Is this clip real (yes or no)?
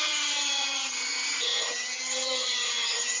no